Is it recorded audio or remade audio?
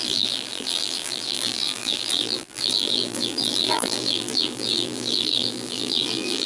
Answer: remade